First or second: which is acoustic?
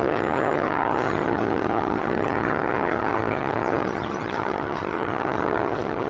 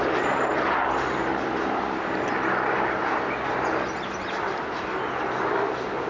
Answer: second